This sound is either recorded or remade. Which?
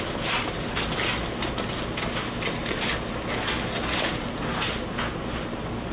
recorded